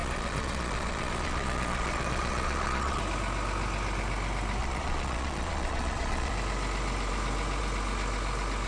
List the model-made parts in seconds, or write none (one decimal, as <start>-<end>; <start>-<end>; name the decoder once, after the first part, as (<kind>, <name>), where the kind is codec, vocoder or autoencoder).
0.0-3.0 (vocoder, Vocos); 4.6-6.3